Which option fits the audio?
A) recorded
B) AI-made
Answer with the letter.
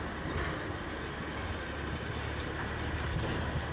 A